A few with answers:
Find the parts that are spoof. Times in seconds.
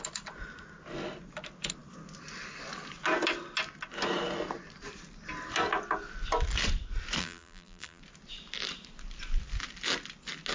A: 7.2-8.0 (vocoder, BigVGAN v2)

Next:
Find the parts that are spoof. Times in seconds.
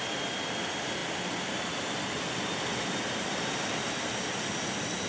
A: none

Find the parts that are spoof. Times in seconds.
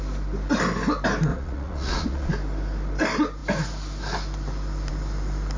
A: 1.3-2.3 (vocoder, Vocos)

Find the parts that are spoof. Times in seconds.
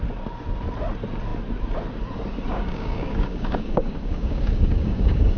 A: 2.5-5.4 (codec, DAC)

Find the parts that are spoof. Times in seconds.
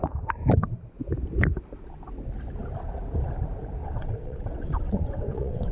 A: 3.8-5.7 (vocoder, WaveNeXt)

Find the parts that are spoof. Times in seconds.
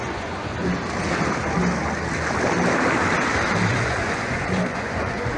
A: 0.0-0.5 (vocoder, Vocos); 3.7-5.4